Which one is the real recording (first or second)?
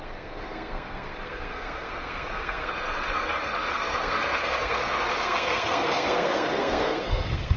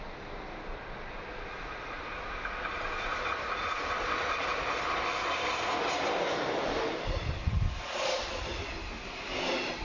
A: second